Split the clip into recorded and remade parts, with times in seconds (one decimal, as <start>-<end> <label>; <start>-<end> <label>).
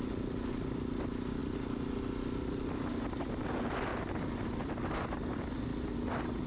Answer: 0.0-3.9 recorded; 3.9-5.1 remade; 5.1-6.5 recorded